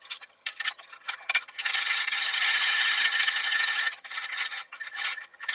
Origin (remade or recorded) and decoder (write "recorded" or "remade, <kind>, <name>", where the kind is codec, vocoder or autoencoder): remade, vocoder, HiFi-GAN